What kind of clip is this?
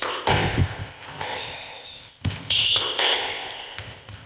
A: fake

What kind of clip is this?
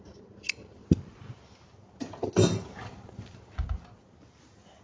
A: real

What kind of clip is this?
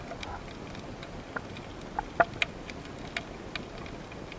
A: real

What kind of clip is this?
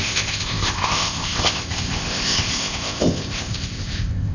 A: fake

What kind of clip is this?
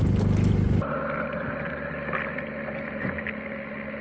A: real